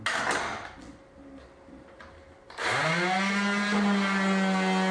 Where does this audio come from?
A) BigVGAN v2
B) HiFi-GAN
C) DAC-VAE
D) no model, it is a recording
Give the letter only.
D